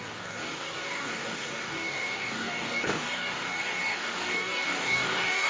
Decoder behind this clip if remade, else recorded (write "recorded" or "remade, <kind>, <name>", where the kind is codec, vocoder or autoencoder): remade, codec, DAC